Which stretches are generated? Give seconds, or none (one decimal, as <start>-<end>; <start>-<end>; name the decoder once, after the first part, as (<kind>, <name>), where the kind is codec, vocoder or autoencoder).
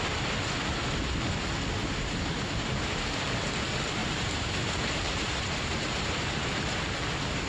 1.8-2.8 (vocoder, BigVGAN v2); 4.0-6.3